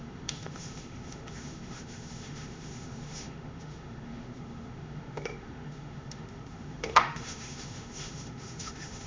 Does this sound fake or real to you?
fake